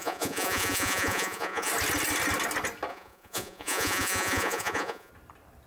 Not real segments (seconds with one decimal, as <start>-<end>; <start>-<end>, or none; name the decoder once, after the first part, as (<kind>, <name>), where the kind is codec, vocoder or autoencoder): 0.0-1.7 (vocoder, Vocos); 2.9-5.1